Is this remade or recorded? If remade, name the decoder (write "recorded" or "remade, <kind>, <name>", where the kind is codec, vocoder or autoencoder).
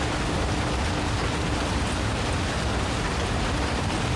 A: recorded